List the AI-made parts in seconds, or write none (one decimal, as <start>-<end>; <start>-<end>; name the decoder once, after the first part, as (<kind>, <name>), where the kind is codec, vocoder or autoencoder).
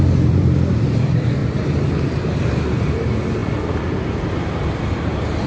0.0-1.4 (vocoder, BigVGAN v2); 2.4-5.5